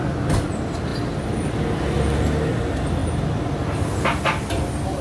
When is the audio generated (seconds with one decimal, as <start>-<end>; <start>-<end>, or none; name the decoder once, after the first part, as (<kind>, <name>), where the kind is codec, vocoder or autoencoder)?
0.9-1.6 (vocoder, BigVGAN v2)